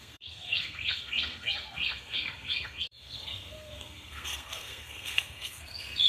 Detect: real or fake fake